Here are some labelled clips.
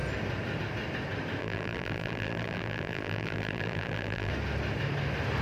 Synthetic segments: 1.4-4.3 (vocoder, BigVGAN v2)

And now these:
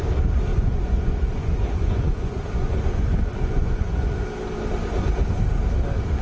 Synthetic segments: 0.5-4.1 (vocoder, Vocos)

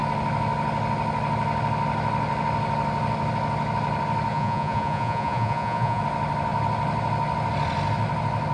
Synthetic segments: 4.3-6.0 (vocoder, Vocos)